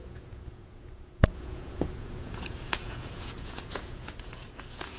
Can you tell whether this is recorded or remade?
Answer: remade